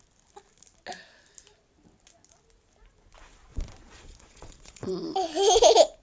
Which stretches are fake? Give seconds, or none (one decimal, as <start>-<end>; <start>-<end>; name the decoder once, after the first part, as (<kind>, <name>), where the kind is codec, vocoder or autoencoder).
3.5-4.9 (vocoder, Vocos)

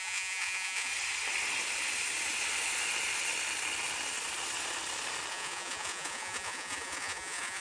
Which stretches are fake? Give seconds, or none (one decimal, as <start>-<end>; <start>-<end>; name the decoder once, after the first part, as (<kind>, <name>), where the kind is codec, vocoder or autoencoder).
0.0-0.9 (vocoder, Vocos); 5.3-7.6

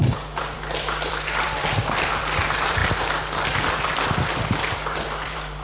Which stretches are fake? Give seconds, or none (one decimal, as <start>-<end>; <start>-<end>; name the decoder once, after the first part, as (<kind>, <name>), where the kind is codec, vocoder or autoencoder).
0.0-2.8 (vocoder, BigVGAN v2); 3.5-5.6

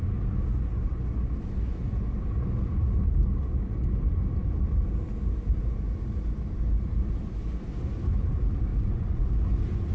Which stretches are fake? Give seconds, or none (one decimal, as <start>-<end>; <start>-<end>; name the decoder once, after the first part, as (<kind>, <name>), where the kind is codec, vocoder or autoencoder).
8.7-9.3 (vocoder, Vocos)

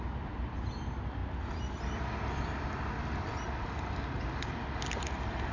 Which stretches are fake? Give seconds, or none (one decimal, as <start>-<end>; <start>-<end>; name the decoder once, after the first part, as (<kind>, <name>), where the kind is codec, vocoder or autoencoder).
none

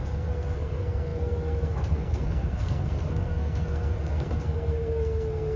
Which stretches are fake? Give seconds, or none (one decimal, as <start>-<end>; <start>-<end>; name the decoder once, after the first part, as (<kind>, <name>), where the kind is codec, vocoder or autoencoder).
0.0-5.6 (codec, SNAC)

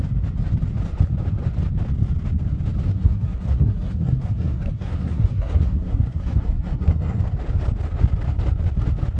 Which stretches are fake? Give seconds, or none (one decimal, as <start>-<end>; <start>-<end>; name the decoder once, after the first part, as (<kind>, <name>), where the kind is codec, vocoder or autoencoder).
2.9-7.2 (codec, SNAC)

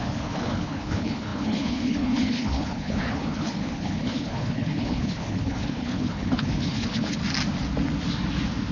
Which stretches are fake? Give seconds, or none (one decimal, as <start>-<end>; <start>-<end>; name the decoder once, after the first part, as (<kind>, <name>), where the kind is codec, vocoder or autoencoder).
0.0-7.2 (codec, HILCodec)